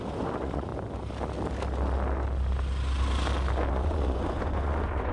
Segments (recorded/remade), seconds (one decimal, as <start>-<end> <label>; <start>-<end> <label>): 0.0-0.7 remade; 0.7-3.7 recorded; 3.7-5.1 remade